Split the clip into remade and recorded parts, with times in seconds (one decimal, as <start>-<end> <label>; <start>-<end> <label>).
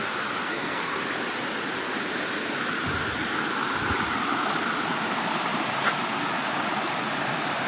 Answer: 0.0-0.4 recorded; 0.4-1.0 remade; 1.0-7.7 recorded